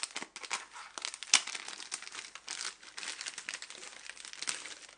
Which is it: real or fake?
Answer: real